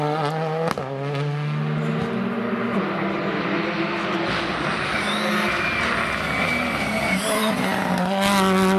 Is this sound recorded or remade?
recorded